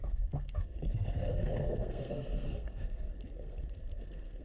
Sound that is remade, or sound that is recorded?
remade